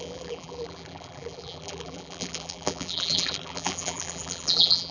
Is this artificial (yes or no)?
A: yes